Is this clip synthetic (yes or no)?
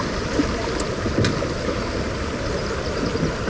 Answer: no